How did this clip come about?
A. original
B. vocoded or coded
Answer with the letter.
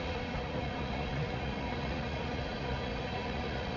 B